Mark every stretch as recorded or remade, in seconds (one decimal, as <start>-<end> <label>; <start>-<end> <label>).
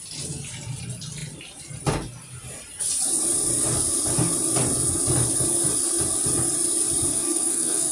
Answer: 0.0-7.1 recorded; 7.1-7.9 remade